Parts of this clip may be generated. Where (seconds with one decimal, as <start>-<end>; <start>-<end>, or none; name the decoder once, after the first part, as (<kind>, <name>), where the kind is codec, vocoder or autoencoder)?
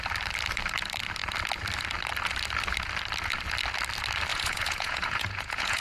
4.3-5.8 (vocoder, Vocos)